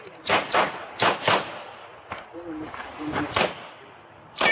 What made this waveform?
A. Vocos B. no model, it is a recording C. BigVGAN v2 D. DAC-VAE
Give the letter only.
C